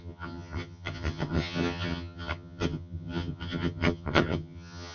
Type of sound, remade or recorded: remade